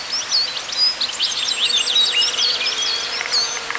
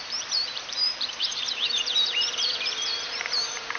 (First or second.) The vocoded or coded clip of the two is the second